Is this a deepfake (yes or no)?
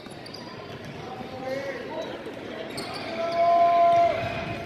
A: no